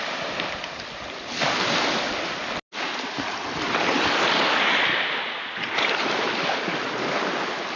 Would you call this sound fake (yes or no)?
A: no